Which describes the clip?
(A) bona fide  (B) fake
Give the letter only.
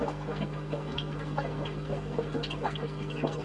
B